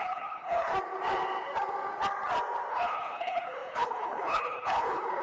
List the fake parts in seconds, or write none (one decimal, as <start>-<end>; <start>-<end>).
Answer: 0.0-0.7; 2.7-5.2